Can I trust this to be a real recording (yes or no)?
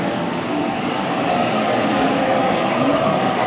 no